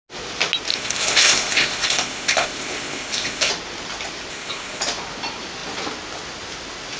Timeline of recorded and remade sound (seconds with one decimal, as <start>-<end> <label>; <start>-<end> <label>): 0.0-0.7 recorded; 0.7-3.5 remade; 3.5-4.3 recorded; 4.3-4.8 remade; 4.8-7.0 recorded